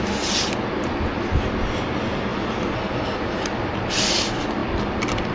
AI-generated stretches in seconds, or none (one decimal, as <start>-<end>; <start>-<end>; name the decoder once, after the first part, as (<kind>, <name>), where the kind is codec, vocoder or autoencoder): none